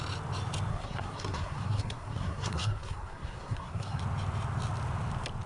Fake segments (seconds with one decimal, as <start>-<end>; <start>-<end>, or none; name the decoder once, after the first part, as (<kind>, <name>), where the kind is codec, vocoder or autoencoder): 0.7-4.0 (codec, SNAC)